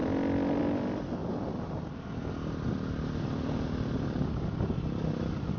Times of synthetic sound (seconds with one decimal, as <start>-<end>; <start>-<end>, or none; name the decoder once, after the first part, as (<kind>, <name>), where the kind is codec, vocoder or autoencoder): 0.6-1.2 (vocoder, BigVGAN v2); 4.6-5.6